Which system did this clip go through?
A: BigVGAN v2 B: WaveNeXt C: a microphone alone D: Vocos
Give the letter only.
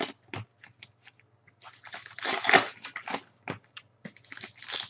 C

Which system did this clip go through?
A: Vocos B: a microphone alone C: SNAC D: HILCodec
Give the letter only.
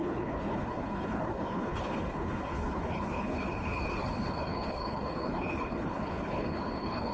D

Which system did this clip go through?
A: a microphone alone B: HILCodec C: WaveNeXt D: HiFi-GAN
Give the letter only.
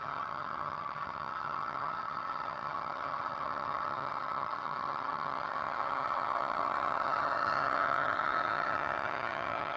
D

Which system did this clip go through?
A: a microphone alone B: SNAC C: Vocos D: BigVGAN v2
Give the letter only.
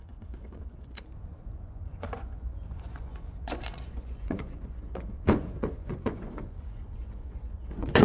C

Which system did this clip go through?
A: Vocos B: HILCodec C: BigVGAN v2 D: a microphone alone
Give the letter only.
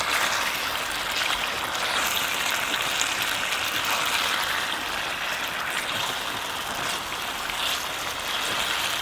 D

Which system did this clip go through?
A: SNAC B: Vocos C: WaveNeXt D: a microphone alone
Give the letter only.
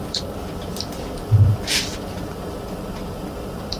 D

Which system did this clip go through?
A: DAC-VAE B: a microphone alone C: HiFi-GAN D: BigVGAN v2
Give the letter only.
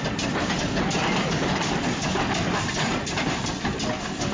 B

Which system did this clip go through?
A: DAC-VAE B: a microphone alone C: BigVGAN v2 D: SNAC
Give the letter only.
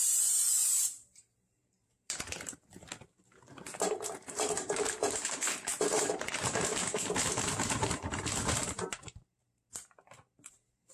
C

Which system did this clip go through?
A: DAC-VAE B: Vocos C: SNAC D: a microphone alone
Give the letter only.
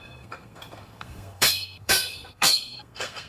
C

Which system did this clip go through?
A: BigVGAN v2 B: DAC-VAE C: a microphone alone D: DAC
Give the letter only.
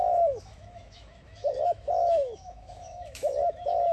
B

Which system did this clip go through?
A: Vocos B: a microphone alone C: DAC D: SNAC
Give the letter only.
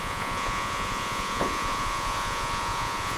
A